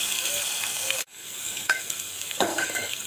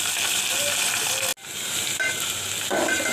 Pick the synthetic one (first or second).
first